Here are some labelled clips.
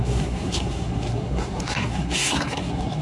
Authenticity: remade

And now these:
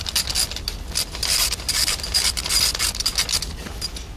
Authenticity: recorded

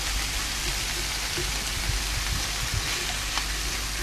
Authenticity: recorded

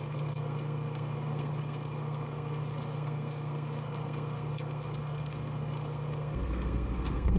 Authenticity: remade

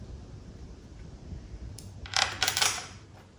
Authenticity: remade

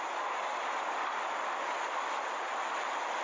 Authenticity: recorded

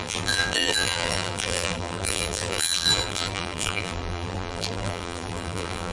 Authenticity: remade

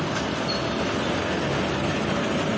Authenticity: recorded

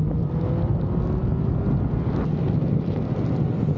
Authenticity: recorded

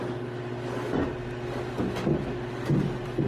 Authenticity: recorded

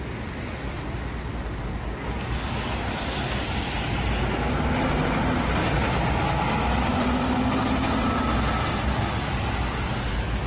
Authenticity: recorded